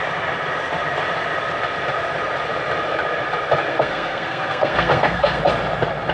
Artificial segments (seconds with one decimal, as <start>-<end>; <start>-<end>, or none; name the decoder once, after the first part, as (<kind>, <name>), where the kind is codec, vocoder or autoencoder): 3.7-5.4 (codec, SNAC)